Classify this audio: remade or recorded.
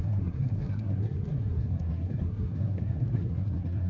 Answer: remade